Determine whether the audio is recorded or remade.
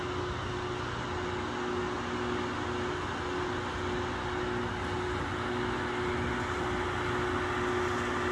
recorded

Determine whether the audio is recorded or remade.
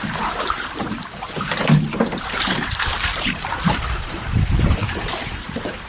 remade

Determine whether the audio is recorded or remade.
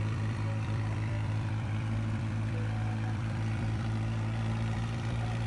remade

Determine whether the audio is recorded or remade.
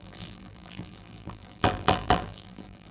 remade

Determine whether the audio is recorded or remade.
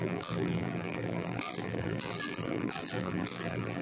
remade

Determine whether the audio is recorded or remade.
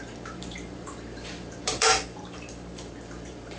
remade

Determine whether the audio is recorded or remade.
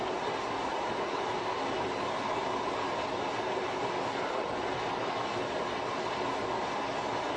recorded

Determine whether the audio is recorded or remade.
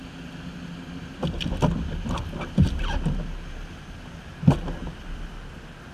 recorded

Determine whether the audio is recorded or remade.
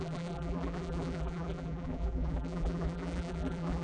remade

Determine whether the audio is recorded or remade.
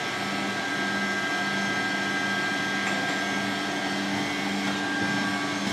recorded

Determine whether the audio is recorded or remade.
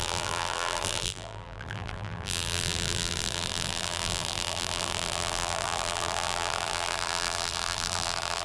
remade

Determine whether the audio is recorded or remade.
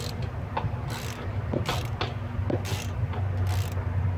recorded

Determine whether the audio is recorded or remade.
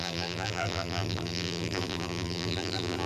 remade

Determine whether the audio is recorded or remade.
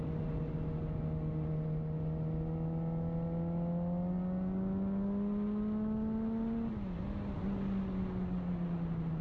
recorded